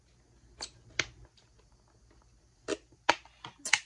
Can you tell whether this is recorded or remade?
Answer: recorded